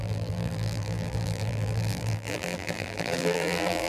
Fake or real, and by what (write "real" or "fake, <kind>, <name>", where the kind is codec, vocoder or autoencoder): fake, vocoder, BigVGAN v2